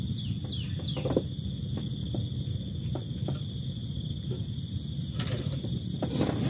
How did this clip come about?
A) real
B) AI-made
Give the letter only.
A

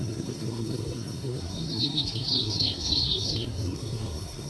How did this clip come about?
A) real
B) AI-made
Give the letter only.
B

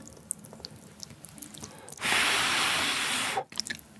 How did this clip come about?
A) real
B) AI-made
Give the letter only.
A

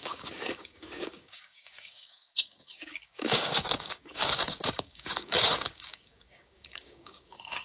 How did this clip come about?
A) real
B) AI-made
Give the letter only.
B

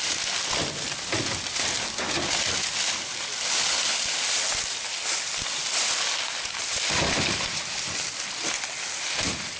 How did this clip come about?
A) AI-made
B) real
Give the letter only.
B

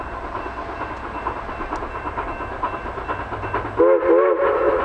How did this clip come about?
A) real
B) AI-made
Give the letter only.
A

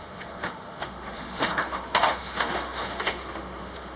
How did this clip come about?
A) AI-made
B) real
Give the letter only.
A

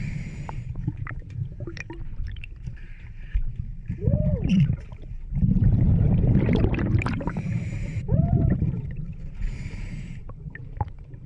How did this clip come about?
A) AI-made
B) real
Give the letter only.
A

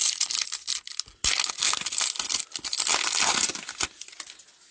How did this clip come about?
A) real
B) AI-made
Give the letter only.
A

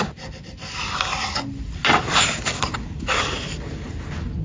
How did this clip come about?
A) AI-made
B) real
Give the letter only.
B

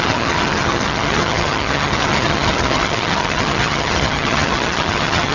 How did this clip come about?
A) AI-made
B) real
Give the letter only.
A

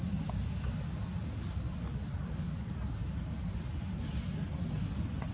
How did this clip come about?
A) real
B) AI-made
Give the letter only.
A